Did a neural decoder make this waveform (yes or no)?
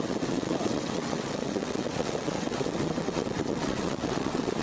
yes